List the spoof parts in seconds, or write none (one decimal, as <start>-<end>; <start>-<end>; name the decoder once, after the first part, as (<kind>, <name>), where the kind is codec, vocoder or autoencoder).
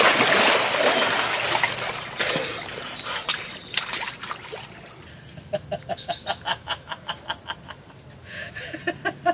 6.5-7.1 (autoencoder, DAC-VAE); 8.2-8.8